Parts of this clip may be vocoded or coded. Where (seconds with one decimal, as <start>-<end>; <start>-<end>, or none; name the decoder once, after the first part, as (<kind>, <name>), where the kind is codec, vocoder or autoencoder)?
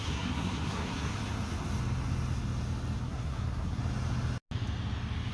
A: 0.0-1.1 (codec, SNAC); 3.0-3.8